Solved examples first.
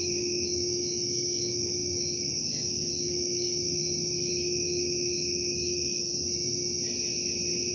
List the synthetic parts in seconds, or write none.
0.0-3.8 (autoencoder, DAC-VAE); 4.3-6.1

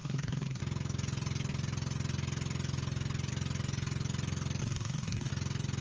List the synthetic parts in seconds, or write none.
0.0-0.6 (codec, SNAC); 4.6-5.3

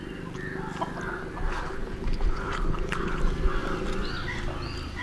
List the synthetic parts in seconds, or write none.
1.5-3.2 (codec, HILCodec)

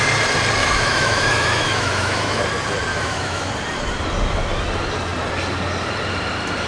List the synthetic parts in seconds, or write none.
0.6-2.4 (autoencoder, DAC-VAE); 2.9-3.5